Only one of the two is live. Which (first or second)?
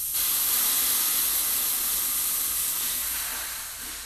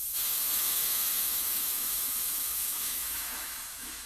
first